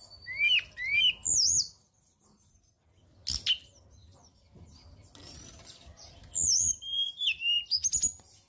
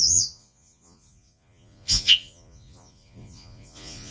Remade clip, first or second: second